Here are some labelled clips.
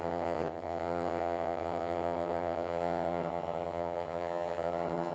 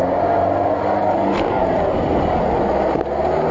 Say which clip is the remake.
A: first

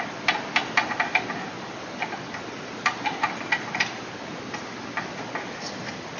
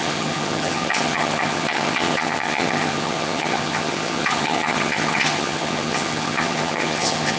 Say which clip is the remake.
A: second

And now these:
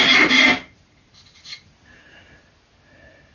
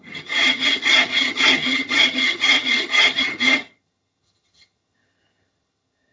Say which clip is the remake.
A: second